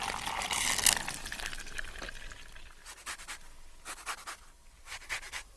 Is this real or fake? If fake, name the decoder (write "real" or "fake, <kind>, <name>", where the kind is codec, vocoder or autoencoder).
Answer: real